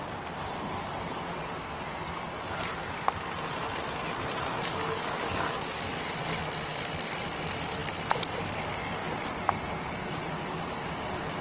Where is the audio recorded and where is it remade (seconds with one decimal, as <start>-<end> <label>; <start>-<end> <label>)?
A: 0.0-4.5 recorded; 4.5-5.9 remade; 5.9-11.4 recorded